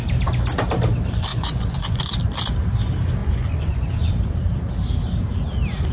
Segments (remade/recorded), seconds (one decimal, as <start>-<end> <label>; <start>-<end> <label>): 0.0-1.3 recorded; 1.3-2.0 remade; 2.0-3.2 recorded; 3.2-3.9 remade; 3.9-5.9 recorded